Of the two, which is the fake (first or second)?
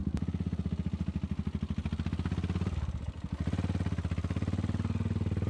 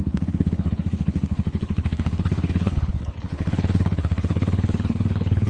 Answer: second